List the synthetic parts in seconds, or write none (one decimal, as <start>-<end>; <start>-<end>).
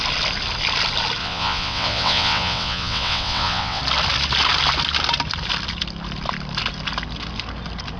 1.2-3.8